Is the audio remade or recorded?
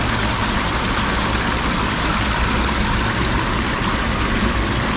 recorded